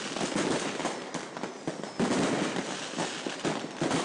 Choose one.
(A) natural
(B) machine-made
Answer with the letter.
A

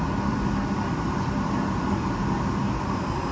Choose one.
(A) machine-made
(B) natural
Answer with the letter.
B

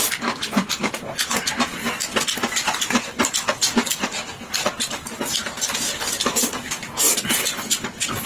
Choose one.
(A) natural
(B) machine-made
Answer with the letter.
A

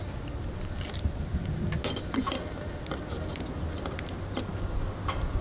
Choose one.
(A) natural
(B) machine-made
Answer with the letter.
A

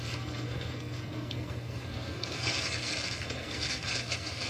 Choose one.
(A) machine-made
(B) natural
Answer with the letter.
A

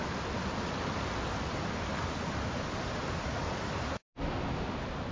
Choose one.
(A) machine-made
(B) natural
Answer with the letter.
B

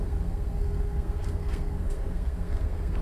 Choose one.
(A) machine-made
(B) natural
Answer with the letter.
A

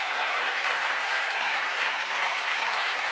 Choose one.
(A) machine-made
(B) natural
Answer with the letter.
A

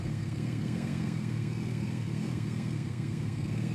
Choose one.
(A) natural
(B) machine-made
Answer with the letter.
B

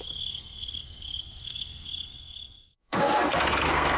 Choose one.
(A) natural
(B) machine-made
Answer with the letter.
B